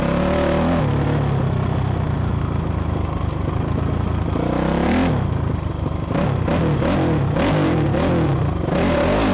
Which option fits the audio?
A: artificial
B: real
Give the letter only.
B